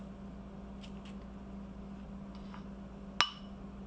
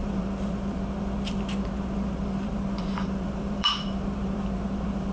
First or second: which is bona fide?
first